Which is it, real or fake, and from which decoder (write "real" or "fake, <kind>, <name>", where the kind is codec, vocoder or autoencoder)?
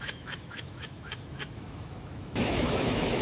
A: fake, autoencoder, DAC-VAE